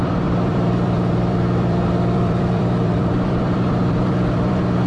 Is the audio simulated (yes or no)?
yes